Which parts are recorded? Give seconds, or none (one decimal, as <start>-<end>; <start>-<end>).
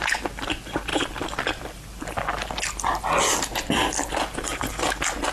0.0-5.3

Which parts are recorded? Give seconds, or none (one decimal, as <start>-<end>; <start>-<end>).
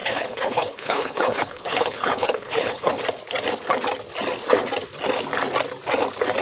2.9-6.4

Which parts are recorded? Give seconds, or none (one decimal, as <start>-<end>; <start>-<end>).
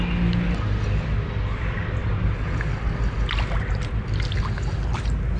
0.0-5.4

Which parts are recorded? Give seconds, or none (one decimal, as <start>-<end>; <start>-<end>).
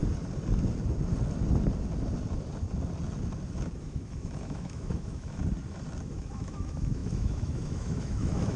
0.0-3.8; 5.4-6.0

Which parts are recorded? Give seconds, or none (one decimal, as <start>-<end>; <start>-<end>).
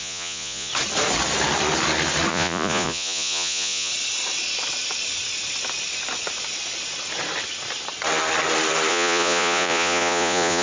0.7-2.3; 3.9-8.9